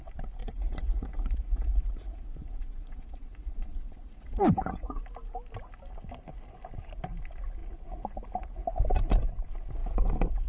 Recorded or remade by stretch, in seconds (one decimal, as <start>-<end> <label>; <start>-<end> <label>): 0.0-0.4 recorded; 0.4-5.0 remade; 5.0-10.5 recorded